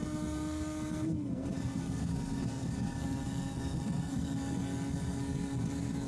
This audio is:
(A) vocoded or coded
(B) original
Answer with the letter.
A